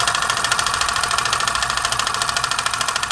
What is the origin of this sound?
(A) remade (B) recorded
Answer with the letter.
B